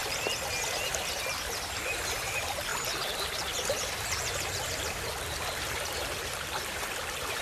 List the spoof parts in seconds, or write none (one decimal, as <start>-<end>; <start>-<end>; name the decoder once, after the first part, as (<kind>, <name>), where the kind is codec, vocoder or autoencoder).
1.7-2.7 (vocoder, BigVGAN v2); 5.4-7.4